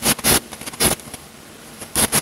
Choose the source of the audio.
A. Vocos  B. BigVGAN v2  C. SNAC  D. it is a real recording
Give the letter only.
D